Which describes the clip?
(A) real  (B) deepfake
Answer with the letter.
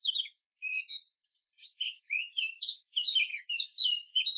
B